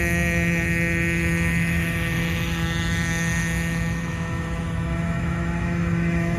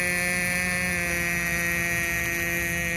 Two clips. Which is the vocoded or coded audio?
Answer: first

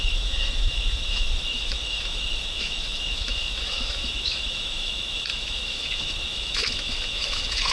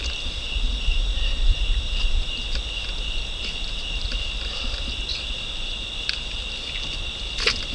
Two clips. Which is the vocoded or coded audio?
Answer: first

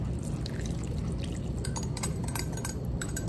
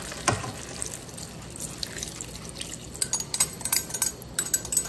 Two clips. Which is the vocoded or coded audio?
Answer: first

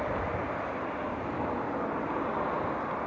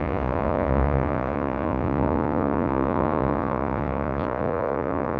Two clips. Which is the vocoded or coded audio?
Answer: second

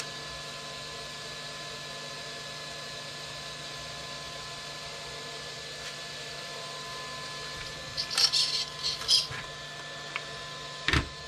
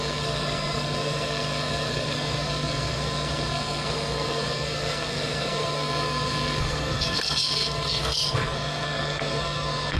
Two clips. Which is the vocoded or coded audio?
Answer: second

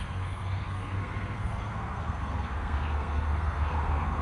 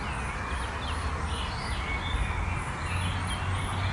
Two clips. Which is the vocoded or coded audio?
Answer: first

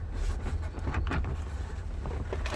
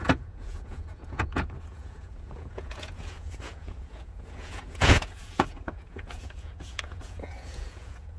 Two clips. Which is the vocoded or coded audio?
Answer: second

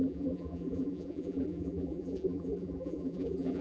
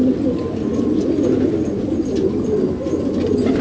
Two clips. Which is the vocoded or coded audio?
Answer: first